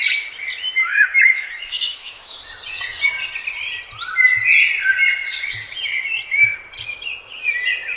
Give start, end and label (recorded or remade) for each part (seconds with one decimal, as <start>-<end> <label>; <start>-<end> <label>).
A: 0.0-0.8 recorded; 0.8-2.4 remade; 2.4-8.0 recorded